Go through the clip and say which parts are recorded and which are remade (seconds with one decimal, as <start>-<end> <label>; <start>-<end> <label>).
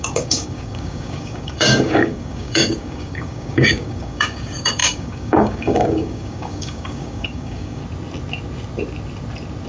0.0-7.8 remade; 7.8-9.7 recorded